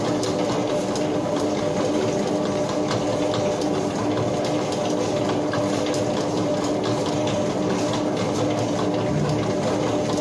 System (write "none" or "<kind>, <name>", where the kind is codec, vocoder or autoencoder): none